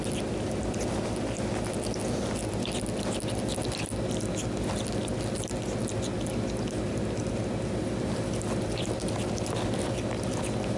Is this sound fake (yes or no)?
no